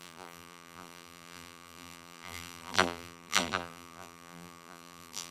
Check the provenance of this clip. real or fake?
fake